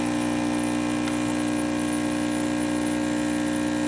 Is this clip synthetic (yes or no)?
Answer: no